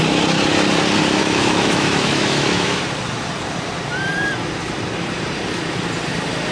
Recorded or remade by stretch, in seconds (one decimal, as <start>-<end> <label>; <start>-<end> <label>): 0.0-1.2 recorded; 1.2-2.8 remade; 2.8-6.5 recorded